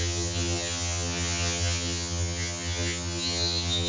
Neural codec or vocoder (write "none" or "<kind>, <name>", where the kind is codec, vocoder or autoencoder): vocoder, HiFi-GAN